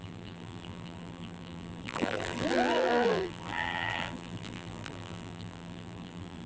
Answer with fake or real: fake